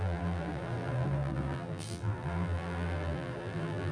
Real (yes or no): no